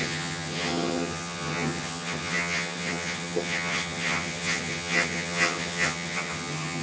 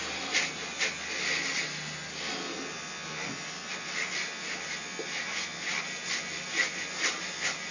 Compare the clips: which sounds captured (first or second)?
second